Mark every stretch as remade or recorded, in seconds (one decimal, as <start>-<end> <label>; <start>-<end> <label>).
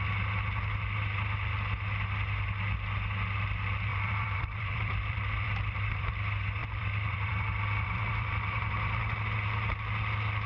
0.0-3.9 recorded; 3.9-6.1 remade; 6.1-6.6 recorded; 6.6-9.0 remade; 9.0-10.5 recorded